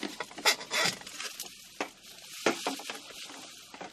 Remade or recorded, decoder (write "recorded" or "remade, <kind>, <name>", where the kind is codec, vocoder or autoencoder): recorded